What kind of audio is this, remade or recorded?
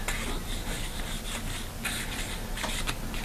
recorded